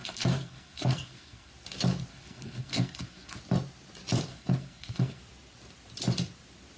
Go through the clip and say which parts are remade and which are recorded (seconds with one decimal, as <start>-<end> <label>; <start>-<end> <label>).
0.0-1.5 remade; 1.5-2.1 recorded; 2.1-3.4 remade; 3.4-4.3 recorded; 4.3-5.2 remade; 5.2-6.8 recorded